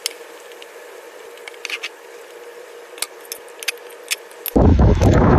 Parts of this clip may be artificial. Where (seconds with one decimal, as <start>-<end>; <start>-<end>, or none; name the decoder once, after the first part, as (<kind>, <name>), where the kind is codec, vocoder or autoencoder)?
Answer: 4.7-5.4 (autoencoder, DAC-VAE)